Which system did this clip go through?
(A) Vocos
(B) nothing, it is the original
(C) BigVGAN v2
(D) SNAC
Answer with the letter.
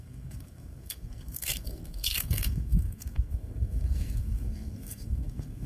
D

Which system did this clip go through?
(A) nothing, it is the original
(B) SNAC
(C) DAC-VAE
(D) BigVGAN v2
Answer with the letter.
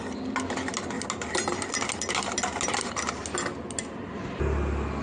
A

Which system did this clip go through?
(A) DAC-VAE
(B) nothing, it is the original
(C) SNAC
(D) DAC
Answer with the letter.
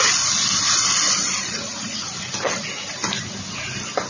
B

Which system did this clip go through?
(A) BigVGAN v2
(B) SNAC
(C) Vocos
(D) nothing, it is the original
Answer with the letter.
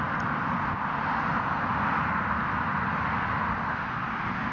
D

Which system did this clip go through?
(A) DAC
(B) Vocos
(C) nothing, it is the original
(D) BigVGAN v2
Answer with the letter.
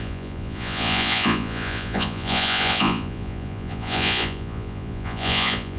B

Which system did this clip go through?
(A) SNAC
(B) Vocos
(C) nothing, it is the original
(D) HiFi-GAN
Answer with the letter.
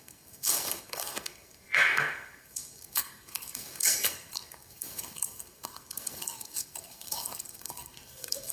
A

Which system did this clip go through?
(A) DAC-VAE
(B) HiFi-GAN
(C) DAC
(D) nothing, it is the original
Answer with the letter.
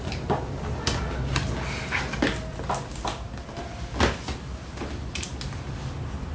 D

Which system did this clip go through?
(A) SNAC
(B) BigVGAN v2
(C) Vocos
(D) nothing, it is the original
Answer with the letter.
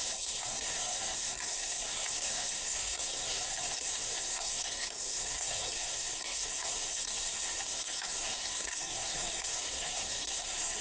A